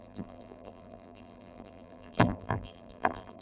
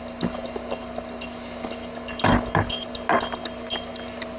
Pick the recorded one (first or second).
second